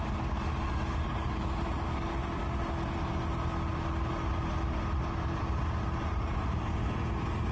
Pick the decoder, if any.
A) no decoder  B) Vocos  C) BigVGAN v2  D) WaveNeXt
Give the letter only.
A